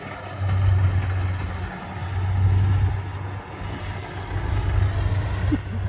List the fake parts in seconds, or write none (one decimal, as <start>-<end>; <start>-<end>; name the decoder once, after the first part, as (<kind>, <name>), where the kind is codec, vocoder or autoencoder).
none